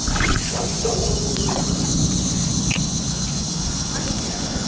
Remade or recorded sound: remade